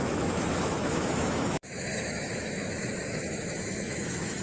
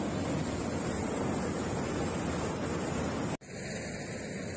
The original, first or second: second